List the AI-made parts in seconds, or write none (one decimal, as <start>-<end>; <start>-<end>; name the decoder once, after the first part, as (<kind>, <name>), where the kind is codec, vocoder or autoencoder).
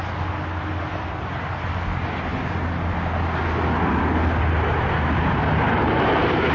none